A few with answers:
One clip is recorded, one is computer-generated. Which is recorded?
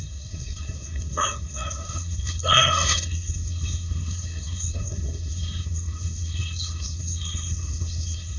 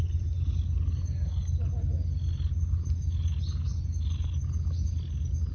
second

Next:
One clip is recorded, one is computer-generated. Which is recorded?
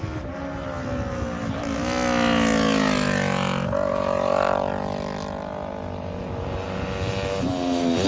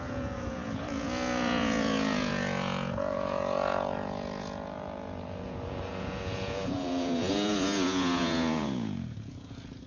first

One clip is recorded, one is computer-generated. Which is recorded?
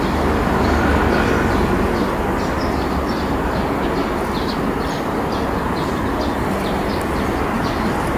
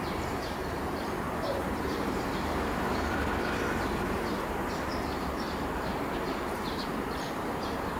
first